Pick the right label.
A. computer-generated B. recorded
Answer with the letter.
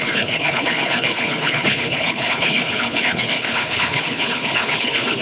A